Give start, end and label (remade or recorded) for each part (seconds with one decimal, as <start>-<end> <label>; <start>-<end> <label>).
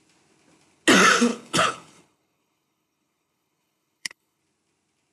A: 0.0-1.3 recorded; 1.3-4.4 remade; 4.4-5.1 recorded